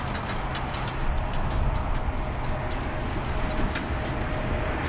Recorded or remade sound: recorded